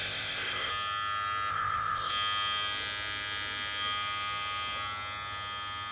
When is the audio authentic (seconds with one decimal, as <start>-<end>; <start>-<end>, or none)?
0.7-1.5; 2.1-5.9